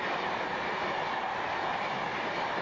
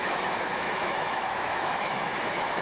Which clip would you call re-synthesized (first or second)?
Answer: second